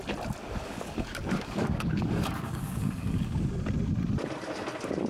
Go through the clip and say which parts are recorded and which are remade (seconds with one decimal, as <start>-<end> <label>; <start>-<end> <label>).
0.0-0.4 recorded; 0.4-3.5 remade; 3.5-5.1 recorded